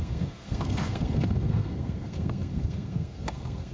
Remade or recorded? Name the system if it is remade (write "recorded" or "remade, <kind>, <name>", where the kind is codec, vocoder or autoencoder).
remade, codec, SNAC